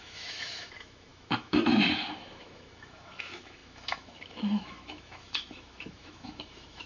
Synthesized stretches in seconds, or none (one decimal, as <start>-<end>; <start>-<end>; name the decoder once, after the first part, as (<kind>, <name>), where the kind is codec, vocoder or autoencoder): 0.0-6.9 (autoencoder, DAC-VAE)

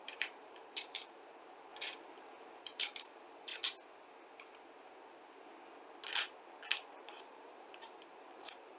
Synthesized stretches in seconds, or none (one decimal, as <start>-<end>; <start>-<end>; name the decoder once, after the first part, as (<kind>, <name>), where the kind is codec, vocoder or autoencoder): 0.0-1.7 (vocoder, BigVGAN v2); 2.6-3.5; 7.0-8.8

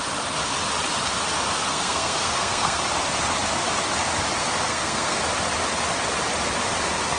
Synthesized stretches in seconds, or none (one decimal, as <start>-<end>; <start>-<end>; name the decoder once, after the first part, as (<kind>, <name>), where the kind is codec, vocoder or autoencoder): 1.7-2.8 (codec, SNAC); 4.4-5.2

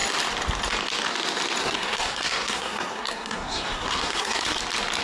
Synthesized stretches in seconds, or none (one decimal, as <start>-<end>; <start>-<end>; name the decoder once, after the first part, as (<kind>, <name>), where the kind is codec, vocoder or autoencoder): 1.6-4.6 (codec, SNAC)

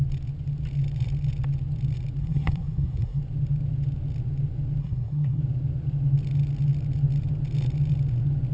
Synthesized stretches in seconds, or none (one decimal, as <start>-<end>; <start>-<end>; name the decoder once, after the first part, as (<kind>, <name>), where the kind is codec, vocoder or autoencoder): 2.2-3.2 (codec, SNAC); 4.8-5.4

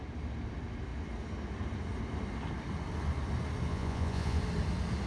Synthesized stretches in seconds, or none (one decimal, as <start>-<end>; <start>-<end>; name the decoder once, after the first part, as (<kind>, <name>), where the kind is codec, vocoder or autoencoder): 3.7-4.4 (vocoder, Vocos)

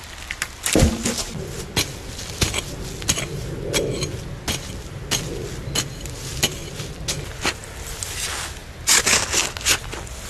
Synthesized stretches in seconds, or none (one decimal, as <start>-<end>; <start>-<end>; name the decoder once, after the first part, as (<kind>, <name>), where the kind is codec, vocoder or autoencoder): none